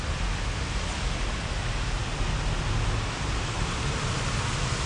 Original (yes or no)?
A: yes